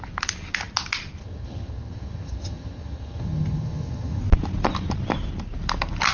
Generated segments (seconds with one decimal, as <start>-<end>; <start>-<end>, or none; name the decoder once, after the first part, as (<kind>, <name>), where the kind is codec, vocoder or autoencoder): 1.2-4.2 (vocoder, HiFi-GAN)